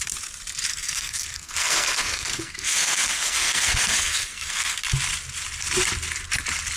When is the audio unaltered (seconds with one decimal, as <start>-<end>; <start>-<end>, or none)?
0.0-0.7; 4.8-6.8